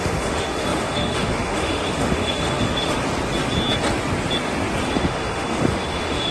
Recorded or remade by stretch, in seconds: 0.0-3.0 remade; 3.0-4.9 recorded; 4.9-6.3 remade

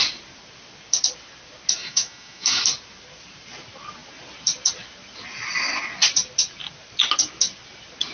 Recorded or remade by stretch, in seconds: 0.0-1.8 recorded; 1.8-2.6 remade; 2.6-8.1 recorded

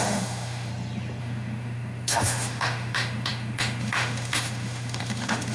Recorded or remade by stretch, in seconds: 0.0-0.7 remade; 0.7-1.2 recorded; 1.2-5.5 remade

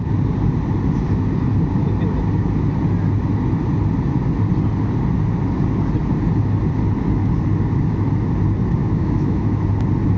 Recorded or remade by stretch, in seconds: 0.0-8.8 recorded; 8.8-9.4 remade; 9.4-10.2 recorded

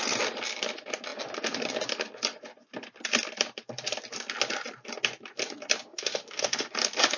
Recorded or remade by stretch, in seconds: 0.0-5.9 recorded; 5.9-6.7 remade; 6.7-7.2 recorded

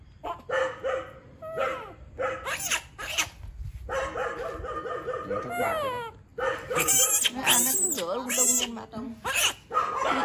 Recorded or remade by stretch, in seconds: 0.0-10.2 recorded

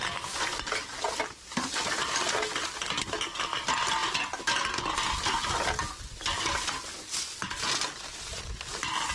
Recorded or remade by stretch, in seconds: 0.0-9.1 recorded

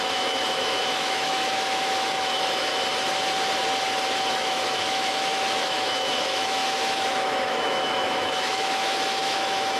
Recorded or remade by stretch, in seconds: 0.0-2.7 remade; 2.7-4.3 recorded; 4.3-9.8 remade